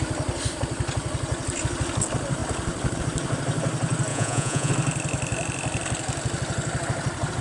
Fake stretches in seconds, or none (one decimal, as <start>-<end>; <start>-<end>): 4.1-4.7